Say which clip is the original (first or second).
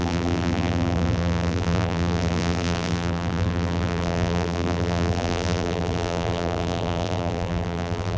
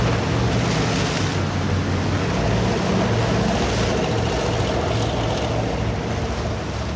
second